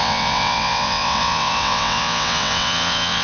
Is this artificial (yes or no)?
yes